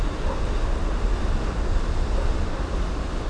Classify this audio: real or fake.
real